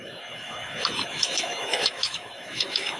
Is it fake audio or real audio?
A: fake